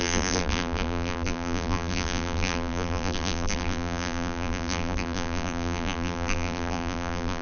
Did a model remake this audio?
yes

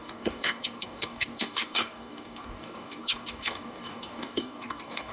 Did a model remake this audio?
yes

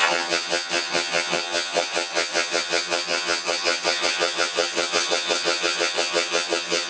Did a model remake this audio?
yes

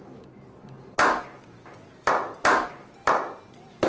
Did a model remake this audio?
no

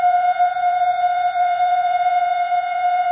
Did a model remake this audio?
yes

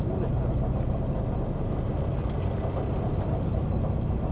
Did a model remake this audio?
no